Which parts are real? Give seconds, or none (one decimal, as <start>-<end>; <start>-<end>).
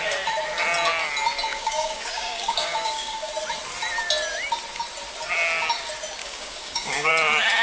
0.0-1.5; 3.3-6.2; 7.1-7.6